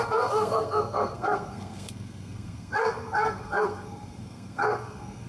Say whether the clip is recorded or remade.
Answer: remade